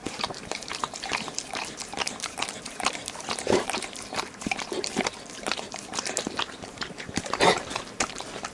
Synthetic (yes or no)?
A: yes